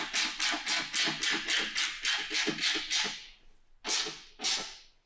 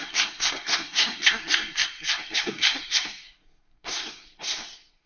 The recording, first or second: first